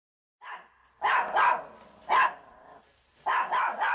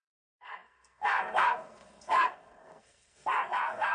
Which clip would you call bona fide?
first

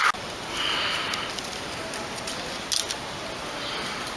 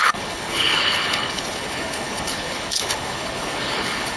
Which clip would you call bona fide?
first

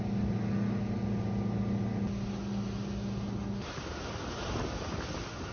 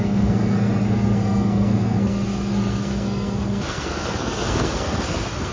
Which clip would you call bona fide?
first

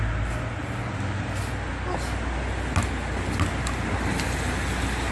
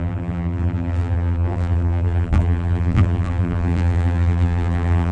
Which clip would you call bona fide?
first